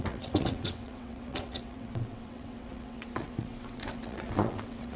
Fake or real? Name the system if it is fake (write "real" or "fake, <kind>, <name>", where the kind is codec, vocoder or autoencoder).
fake, vocoder, WaveNeXt